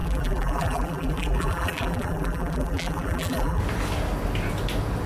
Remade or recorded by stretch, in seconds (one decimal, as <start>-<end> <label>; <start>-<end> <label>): 0.0-3.6 remade; 3.6-5.1 recorded